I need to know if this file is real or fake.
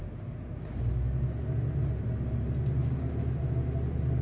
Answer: real